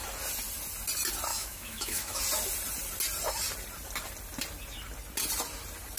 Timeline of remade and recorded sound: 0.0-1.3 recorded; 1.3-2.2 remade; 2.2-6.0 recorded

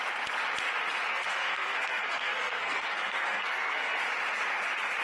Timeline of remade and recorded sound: 0.0-1.1 recorded; 1.1-4.0 remade; 4.0-5.0 recorded

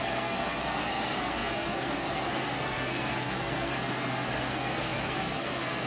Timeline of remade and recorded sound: 0.0-5.9 remade

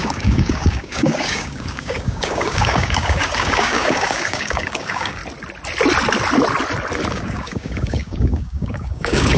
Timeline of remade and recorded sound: 0.0-5.2 remade; 5.2-7.1 recorded; 7.1-9.4 remade

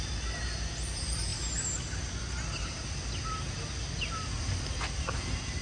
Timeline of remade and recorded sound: 0.0-5.6 recorded

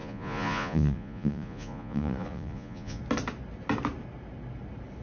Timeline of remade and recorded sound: 0.0-3.0 remade; 3.0-5.0 recorded

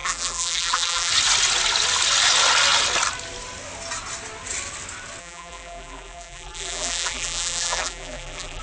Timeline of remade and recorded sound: 0.0-1.1 remade; 1.1-5.2 recorded; 5.2-8.6 remade